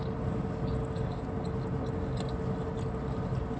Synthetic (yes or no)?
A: no